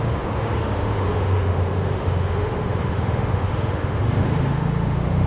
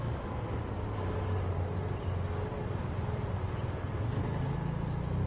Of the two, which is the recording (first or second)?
second